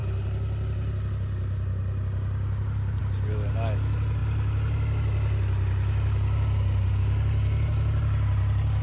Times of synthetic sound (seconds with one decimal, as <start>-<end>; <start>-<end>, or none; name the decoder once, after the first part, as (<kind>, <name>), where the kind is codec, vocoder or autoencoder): none